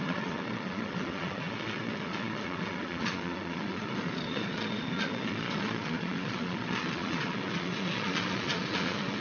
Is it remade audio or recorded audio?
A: remade